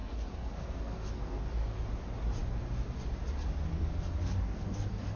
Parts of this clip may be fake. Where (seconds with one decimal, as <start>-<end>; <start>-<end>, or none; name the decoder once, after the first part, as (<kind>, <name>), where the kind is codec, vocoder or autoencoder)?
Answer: 0.0-1.8 (codec, SNAC); 3.7-5.2